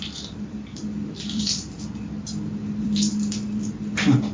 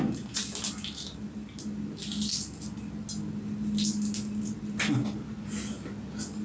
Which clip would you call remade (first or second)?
first